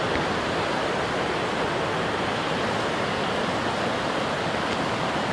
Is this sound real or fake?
real